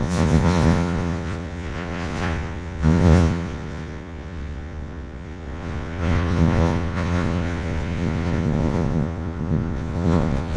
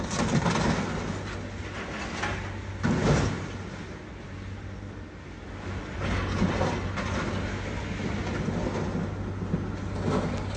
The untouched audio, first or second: second